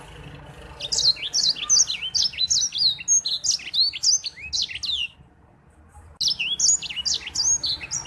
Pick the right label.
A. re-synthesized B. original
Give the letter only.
B